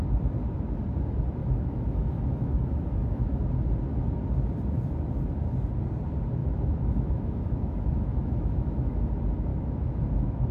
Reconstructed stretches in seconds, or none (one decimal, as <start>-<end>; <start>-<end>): 1.4-3.4; 6.4-9.1; 9.5-10.0